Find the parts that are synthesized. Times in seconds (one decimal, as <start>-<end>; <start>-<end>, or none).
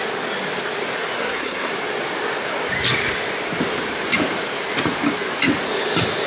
1.2-1.7